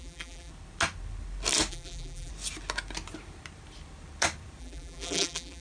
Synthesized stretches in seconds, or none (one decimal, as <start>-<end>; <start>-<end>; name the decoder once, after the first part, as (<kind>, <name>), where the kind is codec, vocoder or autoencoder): 0.0-0.5 (vocoder, BigVGAN v2); 1.7-2.3; 4.6-5.6